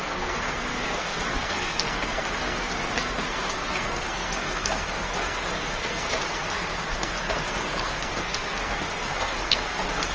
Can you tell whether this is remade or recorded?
remade